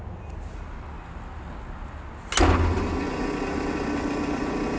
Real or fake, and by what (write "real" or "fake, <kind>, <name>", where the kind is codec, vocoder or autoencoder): real